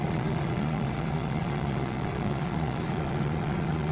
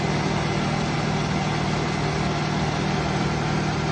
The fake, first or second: first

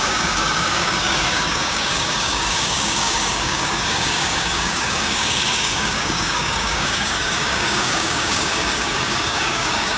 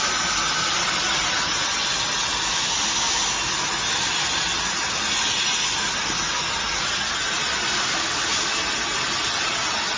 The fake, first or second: first